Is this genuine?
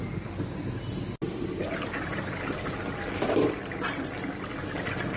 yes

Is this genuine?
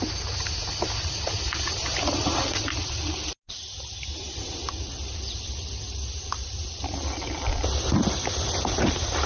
yes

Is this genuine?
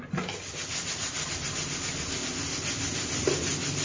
yes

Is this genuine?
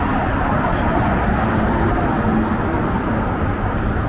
yes